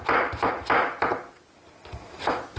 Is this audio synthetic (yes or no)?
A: no